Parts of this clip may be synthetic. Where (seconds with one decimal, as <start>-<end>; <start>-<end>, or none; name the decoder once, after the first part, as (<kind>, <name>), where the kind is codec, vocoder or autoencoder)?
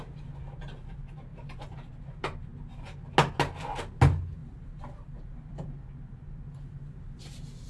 1.3-1.9 (vocoder, BigVGAN v2); 4.4-7.0